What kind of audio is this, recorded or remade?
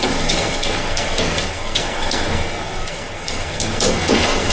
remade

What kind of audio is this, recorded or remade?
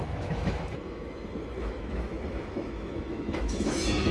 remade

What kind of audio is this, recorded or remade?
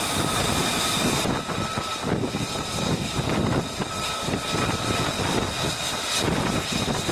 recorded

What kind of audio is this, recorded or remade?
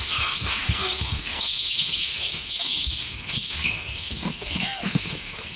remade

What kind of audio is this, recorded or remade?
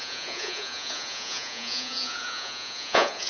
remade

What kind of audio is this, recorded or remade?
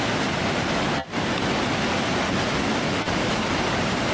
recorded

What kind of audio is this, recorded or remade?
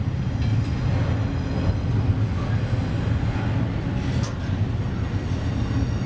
recorded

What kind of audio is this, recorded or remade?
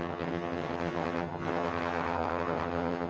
remade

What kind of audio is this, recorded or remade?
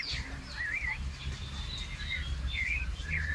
recorded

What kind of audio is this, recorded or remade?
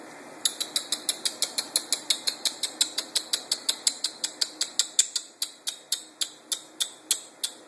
recorded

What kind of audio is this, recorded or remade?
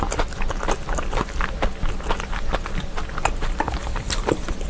recorded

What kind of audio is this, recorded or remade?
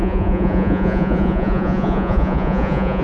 remade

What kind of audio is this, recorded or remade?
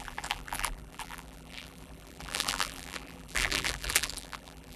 remade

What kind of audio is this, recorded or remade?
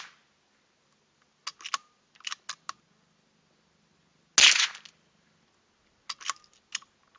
recorded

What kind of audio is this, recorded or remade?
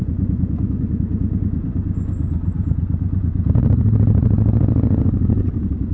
remade